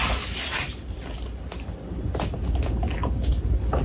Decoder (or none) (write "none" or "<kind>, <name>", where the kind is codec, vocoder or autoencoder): none